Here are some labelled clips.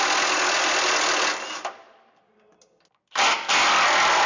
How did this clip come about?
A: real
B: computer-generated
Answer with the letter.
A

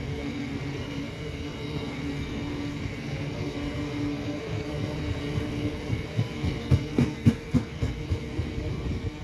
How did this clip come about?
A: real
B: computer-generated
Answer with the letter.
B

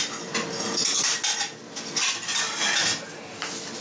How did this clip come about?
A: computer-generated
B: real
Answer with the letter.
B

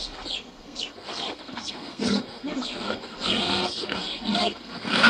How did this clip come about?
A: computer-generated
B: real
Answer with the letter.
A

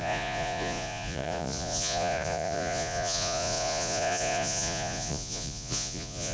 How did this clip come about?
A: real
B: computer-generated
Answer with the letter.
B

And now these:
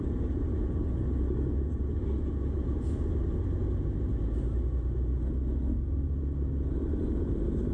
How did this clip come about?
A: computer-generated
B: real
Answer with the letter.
B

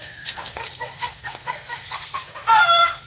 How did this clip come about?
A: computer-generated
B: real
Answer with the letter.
A